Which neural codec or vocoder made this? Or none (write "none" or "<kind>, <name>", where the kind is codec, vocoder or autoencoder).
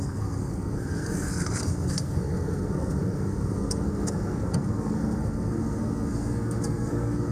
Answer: codec, SNAC